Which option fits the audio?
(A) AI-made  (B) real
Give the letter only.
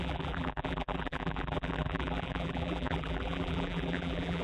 A